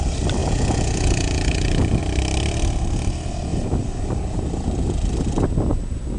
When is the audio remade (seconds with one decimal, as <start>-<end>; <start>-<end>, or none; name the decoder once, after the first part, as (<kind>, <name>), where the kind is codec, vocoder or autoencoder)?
0.4-2.0 (vocoder, Vocos)